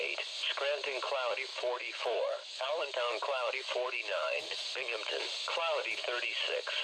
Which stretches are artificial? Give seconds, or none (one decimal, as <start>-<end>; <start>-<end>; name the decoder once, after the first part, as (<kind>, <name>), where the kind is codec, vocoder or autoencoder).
1.5-5.2 (autoencoder, DAC-VAE)

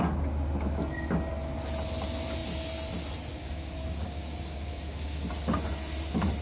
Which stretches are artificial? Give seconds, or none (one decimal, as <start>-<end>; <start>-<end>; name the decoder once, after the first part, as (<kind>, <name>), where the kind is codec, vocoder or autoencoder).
3.3-5.3 (codec, DAC)

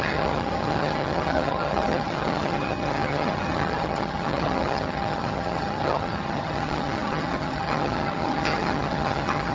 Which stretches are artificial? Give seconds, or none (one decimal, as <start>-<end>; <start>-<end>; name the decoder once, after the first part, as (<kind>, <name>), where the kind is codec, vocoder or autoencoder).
0.0-9.5 (vocoder, HiFi-GAN)

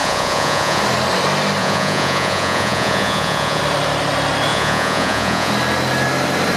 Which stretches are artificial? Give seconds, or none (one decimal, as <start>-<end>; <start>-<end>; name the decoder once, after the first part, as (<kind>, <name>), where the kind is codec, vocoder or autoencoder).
0.0-0.8 (vocoder, Vocos); 1.6-3.6; 4.5-5.5

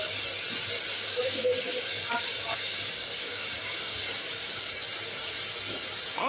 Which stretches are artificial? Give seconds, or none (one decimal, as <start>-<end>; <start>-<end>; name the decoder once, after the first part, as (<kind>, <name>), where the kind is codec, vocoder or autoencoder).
0.9-4.7 (codec, DAC)

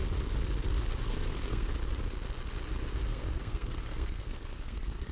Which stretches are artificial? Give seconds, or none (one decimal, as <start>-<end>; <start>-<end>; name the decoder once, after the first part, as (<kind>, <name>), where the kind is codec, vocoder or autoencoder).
1.0-1.7 (codec, SNAC); 3.1-5.1